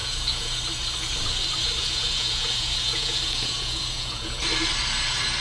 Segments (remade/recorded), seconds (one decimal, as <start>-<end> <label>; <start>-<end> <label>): 0.0-0.6 remade; 0.6-1.8 recorded; 1.8-4.4 remade; 4.4-5.4 recorded